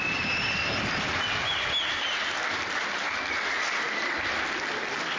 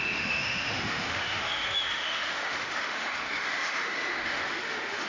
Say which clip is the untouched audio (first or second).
first